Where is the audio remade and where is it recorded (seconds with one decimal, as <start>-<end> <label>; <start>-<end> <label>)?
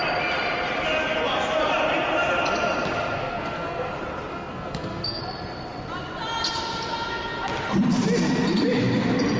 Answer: 0.0-3.2 recorded; 3.2-3.9 remade; 3.9-4.3 recorded; 4.3-5.2 remade; 5.2-9.4 recorded